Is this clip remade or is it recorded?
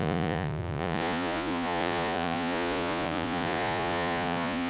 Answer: remade